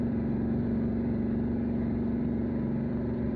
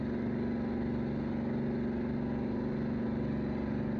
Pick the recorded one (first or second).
second